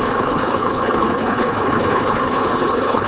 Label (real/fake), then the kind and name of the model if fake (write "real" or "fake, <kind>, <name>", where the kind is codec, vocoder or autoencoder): fake, codec, HILCodec